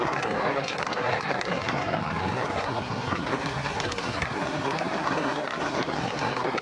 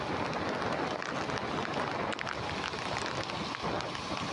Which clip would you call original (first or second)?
second